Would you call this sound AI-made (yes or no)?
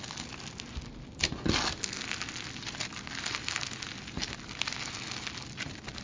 no